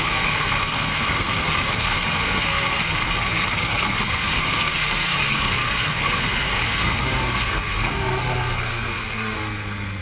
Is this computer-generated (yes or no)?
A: yes